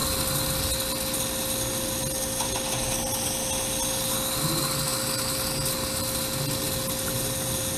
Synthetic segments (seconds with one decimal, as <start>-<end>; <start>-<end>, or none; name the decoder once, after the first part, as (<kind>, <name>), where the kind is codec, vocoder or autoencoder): none